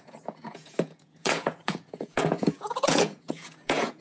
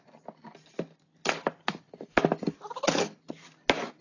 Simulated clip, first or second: first